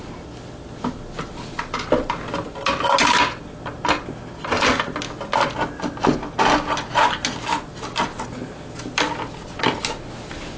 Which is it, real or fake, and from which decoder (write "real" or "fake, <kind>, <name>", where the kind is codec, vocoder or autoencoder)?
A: real